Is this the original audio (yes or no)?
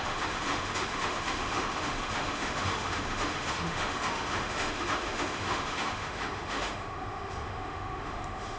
no